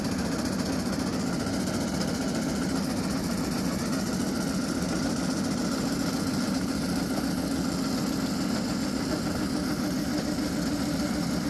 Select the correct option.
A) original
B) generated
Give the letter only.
A